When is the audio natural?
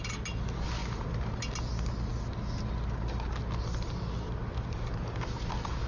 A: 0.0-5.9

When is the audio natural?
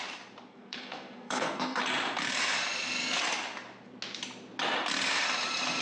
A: 0.0-0.5; 1.8-5.8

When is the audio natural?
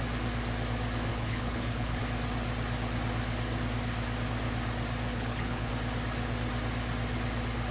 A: 0.0-1.1; 2.0-5.1; 5.7-7.7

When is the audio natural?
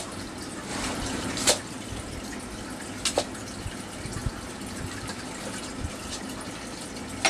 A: 0.0-0.7; 1.5-7.3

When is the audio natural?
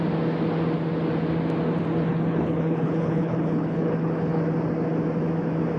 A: 0.0-2.1; 4.4-5.8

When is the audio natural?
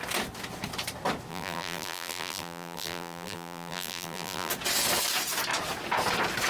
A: 0.0-1.3; 4.5-6.5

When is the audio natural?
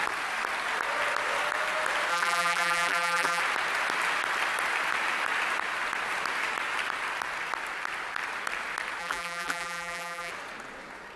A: 0.0-2.1; 3.4-9.0; 10.3-11.2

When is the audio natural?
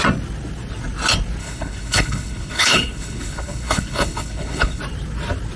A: 0.0-1.4; 4.8-5.6